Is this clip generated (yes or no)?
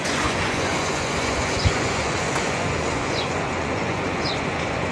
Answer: yes